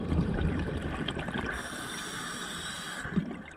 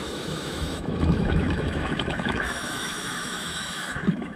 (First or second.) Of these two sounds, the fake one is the second